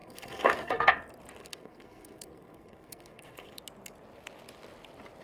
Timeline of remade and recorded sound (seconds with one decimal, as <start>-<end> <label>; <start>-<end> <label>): 0.0-0.9 remade; 0.9-1.4 recorded; 1.4-3.6 remade; 3.6-5.2 recorded